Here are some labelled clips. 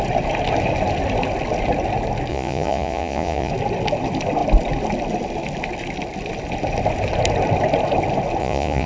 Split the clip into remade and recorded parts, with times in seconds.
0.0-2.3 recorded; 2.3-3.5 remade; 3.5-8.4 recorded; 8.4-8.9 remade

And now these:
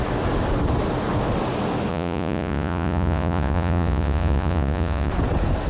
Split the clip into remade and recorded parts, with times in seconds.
0.0-1.9 recorded; 1.9-5.1 remade; 5.1-5.7 recorded

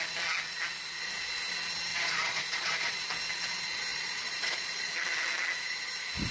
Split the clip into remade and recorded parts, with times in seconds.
0.0-1.9 recorded; 1.9-3.1 remade; 3.1-3.9 recorded; 3.9-4.9 remade; 4.9-6.3 recorded

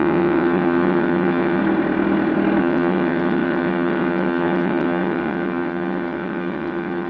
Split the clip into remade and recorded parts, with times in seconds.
0.0-1.6 remade; 1.6-2.6 recorded; 2.6-7.1 remade

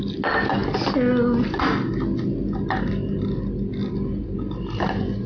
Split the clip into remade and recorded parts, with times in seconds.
0.0-5.3 recorded